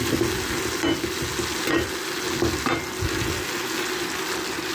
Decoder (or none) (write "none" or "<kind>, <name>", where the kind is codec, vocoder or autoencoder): none